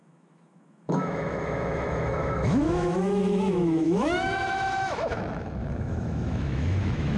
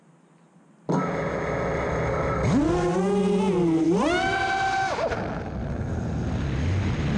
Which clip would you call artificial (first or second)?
first